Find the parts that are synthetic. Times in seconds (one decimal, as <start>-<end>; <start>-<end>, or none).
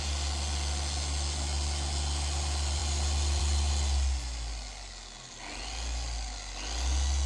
none